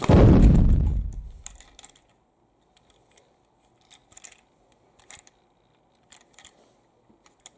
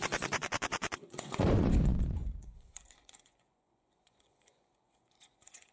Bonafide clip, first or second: first